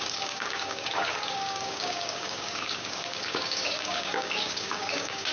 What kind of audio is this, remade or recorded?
remade